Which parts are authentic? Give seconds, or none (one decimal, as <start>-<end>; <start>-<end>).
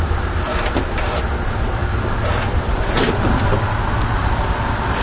0.5-1.4